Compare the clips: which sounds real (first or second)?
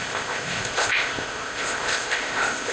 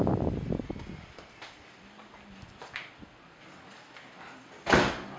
second